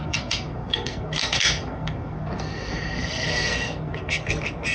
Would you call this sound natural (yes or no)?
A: no